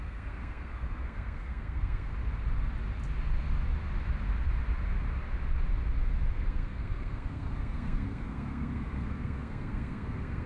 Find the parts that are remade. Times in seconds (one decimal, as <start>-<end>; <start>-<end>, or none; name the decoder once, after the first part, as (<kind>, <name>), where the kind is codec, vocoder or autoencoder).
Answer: 0.0-2.1 (codec, SNAC); 6.3-10.5